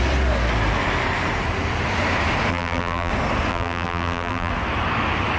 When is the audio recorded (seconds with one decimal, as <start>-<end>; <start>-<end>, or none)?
0.0-2.5; 3.1-3.5; 4.5-5.4